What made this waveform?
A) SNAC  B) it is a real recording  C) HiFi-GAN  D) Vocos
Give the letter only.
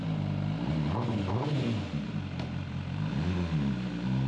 B